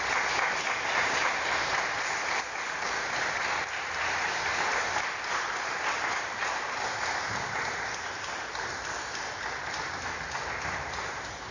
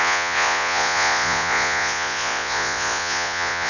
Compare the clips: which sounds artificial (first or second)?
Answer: second